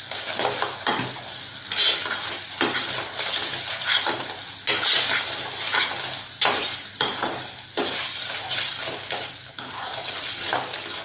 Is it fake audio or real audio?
real